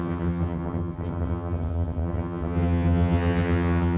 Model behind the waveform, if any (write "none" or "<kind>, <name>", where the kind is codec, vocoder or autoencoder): vocoder, HiFi-GAN